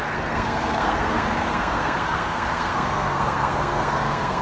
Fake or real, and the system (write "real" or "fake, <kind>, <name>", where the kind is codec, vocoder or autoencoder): fake, codec, SNAC